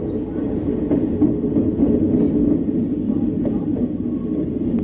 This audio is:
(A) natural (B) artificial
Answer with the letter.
A